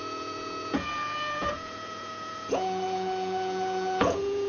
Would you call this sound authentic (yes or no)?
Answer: no